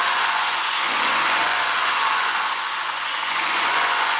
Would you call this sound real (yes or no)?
no